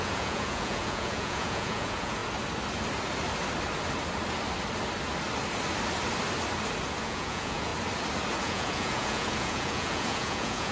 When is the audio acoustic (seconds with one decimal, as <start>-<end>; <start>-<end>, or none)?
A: 2.2-7.0; 7.7-8.4